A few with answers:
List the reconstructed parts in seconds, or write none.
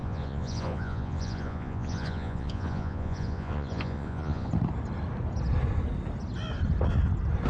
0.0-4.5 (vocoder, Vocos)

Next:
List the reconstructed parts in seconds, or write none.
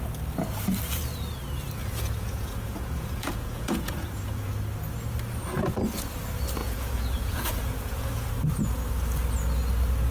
1.8-4.5 (vocoder, Vocos); 6.6-8.3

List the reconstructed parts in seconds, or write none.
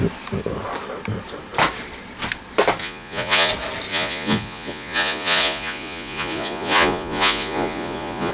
2.8-3.5 (vocoder, Vocos); 3.9-8.3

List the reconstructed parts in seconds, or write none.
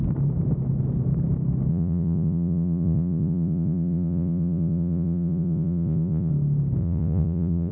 1.7-6.3 (vocoder, Vocos); 6.8-7.7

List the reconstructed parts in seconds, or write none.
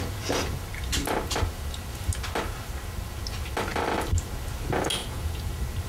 5.0-5.5 (vocoder, Vocos)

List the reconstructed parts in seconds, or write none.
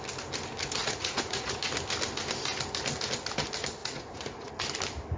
0.8-1.6 (vocoder, Vocos); 3.8-4.5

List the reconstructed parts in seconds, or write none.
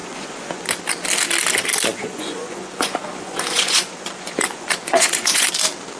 0.0-0.7 (vocoder, Vocos); 2.0-5.6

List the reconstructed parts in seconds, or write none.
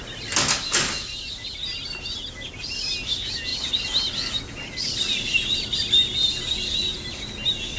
none